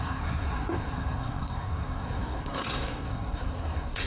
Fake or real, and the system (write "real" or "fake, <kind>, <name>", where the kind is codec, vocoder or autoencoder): fake, codec, SNAC